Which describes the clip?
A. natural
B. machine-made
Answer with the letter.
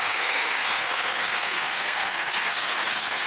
B